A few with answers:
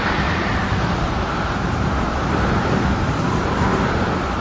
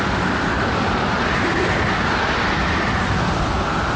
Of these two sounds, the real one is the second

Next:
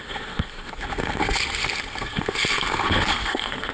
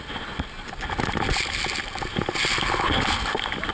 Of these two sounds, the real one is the second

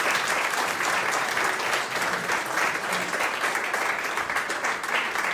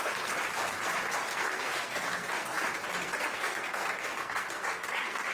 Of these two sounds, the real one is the first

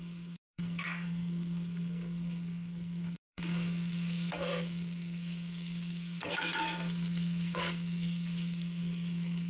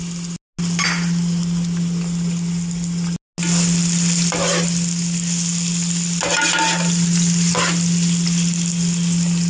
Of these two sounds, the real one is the second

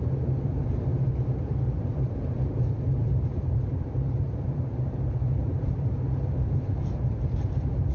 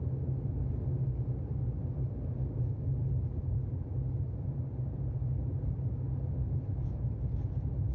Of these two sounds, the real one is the second